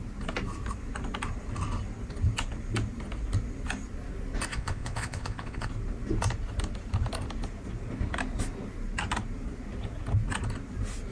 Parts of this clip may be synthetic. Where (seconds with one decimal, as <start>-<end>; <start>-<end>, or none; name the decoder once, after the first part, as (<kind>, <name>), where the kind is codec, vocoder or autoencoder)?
4.5-5.7 (vocoder, Vocos)